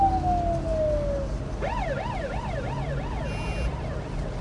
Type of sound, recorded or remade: recorded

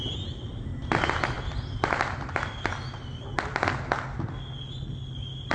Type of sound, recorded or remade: recorded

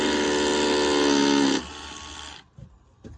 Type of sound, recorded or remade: recorded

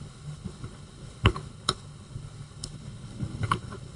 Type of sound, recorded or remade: remade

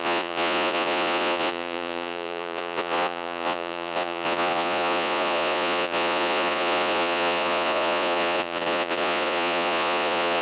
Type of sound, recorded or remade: remade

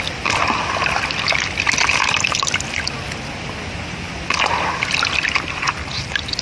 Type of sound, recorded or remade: recorded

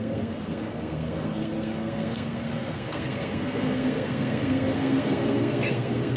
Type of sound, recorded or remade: remade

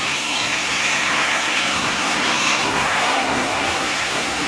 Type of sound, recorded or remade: remade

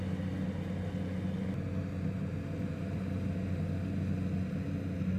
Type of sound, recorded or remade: recorded